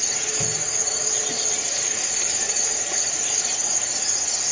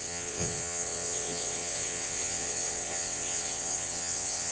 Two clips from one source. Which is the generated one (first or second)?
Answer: second